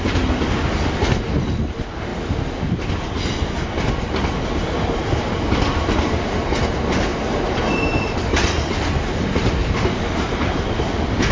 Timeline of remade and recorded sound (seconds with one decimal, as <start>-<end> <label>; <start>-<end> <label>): 0.0-9.6 recorded; 9.6-10.8 remade; 10.8-11.3 recorded

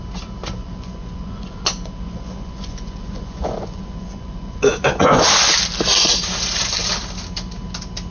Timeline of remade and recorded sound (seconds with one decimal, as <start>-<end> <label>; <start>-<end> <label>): 0.0-0.6 recorded; 0.6-5.5 remade; 5.5-8.1 recorded